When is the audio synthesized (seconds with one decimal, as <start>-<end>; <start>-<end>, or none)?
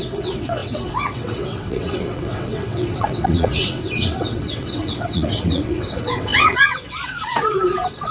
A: 0.0-8.1